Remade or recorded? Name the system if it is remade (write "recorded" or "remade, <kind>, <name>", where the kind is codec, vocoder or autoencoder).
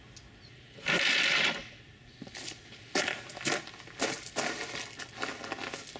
recorded